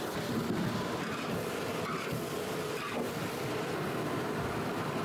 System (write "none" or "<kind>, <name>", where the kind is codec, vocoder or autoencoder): none